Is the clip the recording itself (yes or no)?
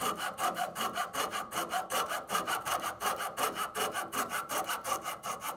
no